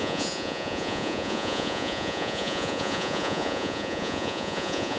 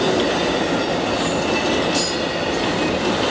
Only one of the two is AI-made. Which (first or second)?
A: first